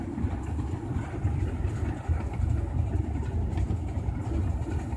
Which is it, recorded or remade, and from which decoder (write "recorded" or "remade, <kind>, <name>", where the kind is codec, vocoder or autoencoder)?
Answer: recorded